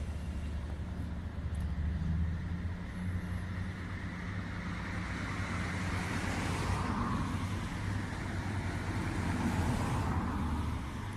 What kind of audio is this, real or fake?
real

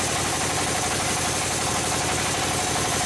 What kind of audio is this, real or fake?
fake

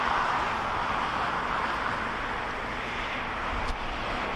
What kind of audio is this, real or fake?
real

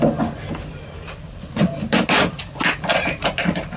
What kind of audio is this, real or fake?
real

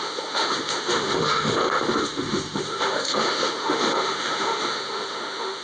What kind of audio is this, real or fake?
fake